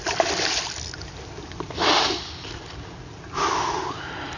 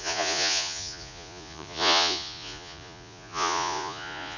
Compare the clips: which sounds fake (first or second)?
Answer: second